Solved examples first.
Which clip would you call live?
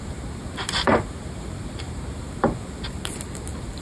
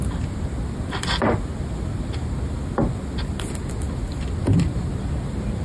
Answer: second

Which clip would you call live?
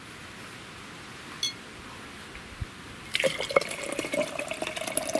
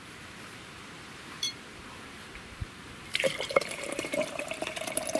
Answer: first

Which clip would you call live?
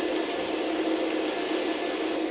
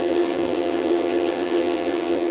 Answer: first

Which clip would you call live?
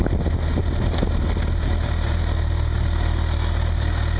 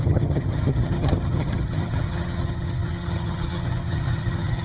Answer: first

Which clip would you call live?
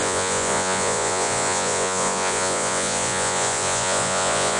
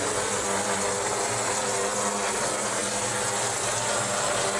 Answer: second